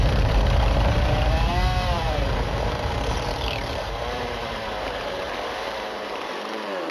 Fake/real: fake